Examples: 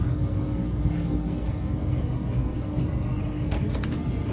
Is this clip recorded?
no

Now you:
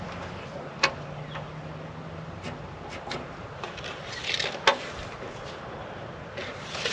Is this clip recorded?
yes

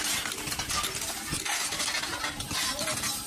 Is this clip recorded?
yes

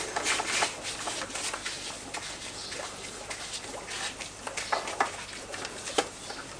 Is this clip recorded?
yes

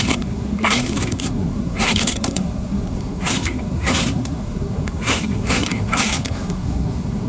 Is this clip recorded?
no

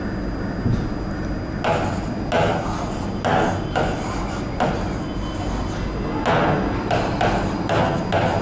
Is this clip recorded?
yes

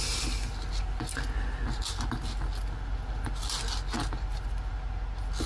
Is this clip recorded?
yes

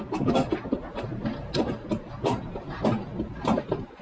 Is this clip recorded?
yes